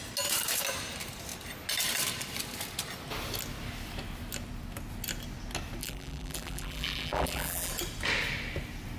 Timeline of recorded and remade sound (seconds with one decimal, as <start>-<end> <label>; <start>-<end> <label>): 0.0-5.8 recorded; 5.8-7.7 remade; 7.7-9.0 recorded

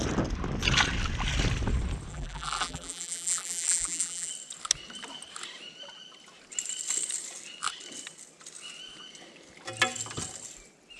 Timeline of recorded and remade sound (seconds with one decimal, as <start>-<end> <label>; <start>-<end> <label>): 0.0-2.1 recorded; 2.1-4.3 remade; 4.3-11.0 recorded

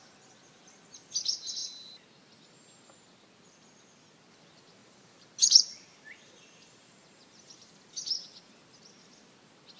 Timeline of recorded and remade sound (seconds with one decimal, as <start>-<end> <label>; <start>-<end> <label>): 0.0-4.8 recorded; 4.8-7.7 remade; 7.7-9.8 recorded